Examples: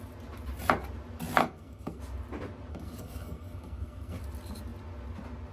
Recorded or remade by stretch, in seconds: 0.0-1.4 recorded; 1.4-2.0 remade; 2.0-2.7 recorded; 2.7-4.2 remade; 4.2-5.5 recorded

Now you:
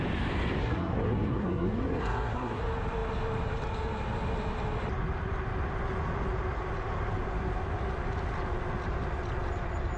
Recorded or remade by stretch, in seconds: 0.0-0.6 recorded; 0.6-2.6 remade; 2.6-10.0 recorded

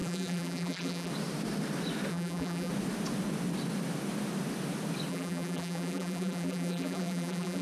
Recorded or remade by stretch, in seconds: 0.0-1.1 remade; 1.1-2.1 recorded; 2.1-2.7 remade; 2.7-5.1 recorded; 5.1-7.6 remade

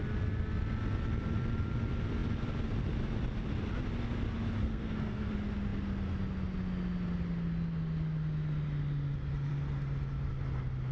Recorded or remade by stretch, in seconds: 0.0-4.6 recorded; 4.6-5.3 remade; 5.3-10.9 recorded

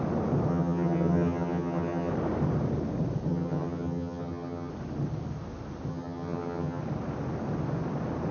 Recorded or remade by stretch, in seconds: 0.0-0.5 recorded; 0.5-2.1 remade; 2.1-3.3 recorded; 3.3-4.7 remade; 4.7-5.9 recorded; 5.9-6.8 remade; 6.8-8.3 recorded

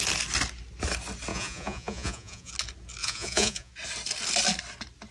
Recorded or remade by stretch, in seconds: 0.0-1.3 recorded; 1.3-2.5 remade; 2.5-3.0 recorded; 3.0-3.7 remade; 3.7-5.1 recorded